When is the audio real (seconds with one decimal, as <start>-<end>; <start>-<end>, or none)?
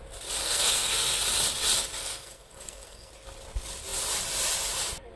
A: 0.0-0.4; 1.2-2.0; 3.1-5.2